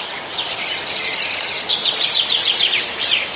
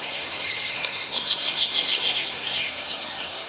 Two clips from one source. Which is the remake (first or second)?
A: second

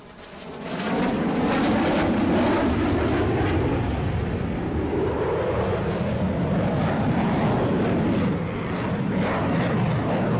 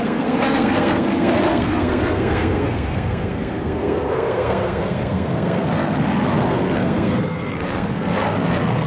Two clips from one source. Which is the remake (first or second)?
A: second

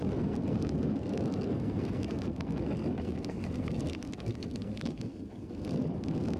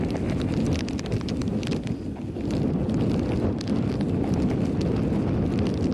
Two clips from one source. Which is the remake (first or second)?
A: first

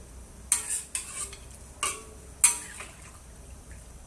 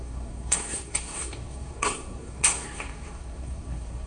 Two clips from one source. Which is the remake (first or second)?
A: second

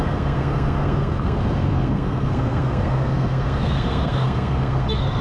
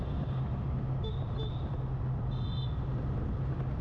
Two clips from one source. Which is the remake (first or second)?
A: first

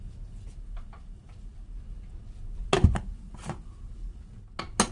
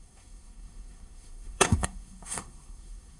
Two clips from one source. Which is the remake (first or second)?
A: second